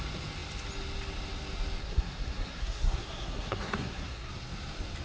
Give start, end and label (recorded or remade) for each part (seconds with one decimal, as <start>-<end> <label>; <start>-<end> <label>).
0.0-1.8 recorded; 1.8-4.3 remade; 4.3-5.0 recorded